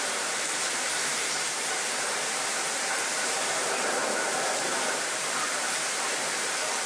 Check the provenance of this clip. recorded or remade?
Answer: remade